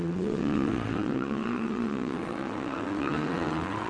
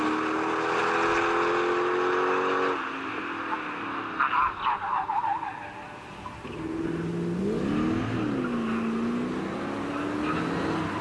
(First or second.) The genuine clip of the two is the second